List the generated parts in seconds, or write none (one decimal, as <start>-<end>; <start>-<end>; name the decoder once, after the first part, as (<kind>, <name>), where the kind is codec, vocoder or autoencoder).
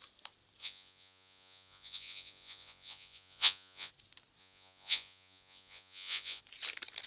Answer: 0.6-3.9 (vocoder, Vocos); 4.4-6.4